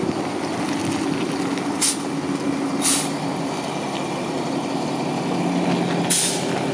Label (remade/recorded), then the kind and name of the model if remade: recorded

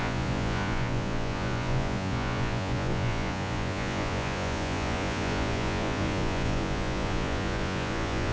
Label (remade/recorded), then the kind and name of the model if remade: remade, vocoder, Vocos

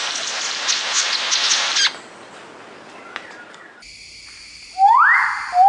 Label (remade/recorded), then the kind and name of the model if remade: recorded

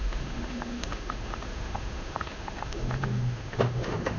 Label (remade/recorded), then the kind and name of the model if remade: remade, autoencoder, DAC-VAE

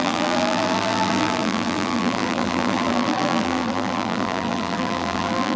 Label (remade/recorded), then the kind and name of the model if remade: remade, vocoder, BigVGAN v2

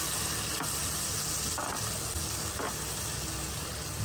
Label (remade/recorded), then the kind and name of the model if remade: recorded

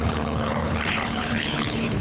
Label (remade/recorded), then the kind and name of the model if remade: remade, codec, HILCodec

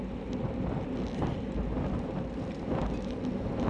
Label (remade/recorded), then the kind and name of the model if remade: recorded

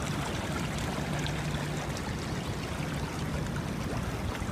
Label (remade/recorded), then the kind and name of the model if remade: recorded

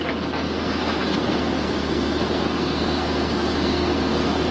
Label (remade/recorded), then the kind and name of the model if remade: remade, codec, SNAC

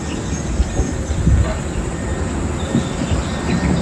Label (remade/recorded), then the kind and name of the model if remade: recorded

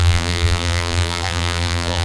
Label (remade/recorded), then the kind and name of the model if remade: remade, vocoder, BigVGAN v2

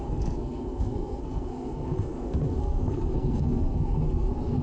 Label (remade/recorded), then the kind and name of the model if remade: remade, codec, SNAC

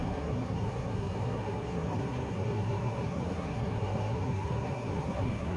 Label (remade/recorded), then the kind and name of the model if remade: remade, codec, SNAC